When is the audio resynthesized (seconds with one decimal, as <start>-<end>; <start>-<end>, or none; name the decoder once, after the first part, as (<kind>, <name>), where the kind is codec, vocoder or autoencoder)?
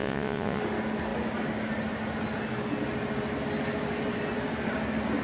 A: 0.0-0.6 (vocoder, Vocos)